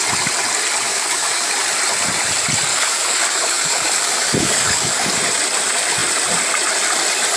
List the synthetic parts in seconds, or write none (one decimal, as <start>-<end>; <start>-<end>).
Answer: 0.9-1.5; 2.7-5.2